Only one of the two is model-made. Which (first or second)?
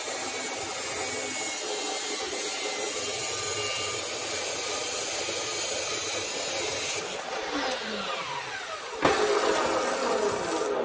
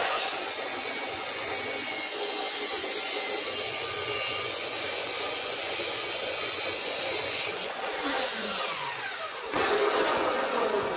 second